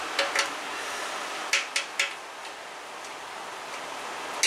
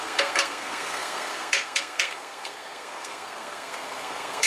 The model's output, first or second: second